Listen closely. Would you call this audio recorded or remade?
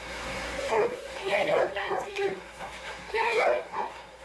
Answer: remade